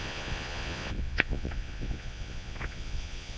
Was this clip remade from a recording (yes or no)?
yes